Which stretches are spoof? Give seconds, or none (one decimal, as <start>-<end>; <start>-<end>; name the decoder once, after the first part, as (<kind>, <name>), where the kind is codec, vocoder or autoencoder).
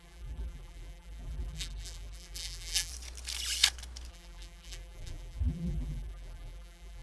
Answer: 0.0-2.9 (vocoder, BigVGAN v2); 4.1-7.0